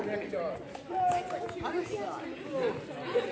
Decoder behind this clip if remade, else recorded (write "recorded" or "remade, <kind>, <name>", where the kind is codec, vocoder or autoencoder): recorded